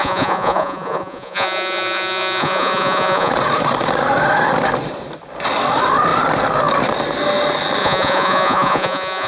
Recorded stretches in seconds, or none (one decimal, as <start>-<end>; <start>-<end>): 3.3-7.8